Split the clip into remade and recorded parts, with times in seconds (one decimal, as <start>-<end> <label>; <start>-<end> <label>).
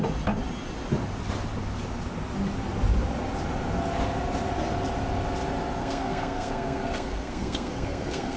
0.0-5.8 recorded; 5.8-8.4 remade